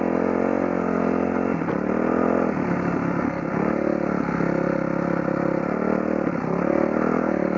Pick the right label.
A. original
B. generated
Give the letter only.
A